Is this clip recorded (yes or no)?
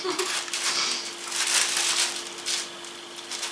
yes